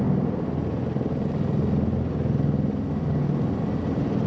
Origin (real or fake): real